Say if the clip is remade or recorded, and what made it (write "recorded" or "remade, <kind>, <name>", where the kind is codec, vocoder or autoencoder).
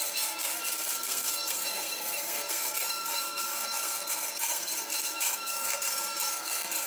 remade, codec, SNAC